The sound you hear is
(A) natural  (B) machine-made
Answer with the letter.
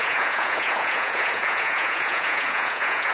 B